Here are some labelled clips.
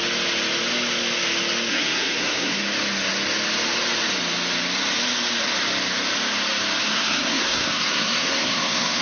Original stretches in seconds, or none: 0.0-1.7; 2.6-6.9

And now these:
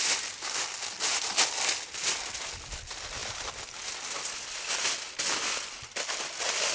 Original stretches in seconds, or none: 0.0-6.7

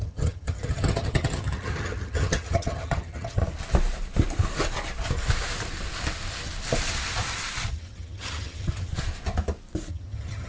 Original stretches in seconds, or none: 3.4-7.7; 8.9-9.9

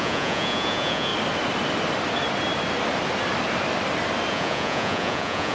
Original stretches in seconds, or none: 1.1-4.3

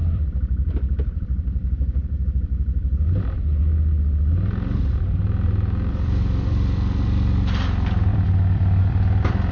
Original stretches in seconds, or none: 3.6-5.9